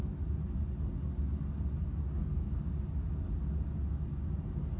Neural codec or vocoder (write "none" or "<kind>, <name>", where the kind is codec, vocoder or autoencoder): none